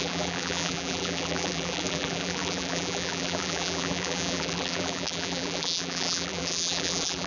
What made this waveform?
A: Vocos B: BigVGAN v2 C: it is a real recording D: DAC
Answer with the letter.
B